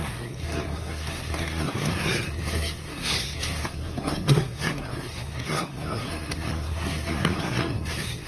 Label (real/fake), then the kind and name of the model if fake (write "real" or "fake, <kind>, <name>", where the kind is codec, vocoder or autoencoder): fake, codec, SNAC